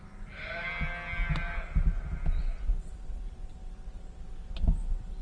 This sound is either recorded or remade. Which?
recorded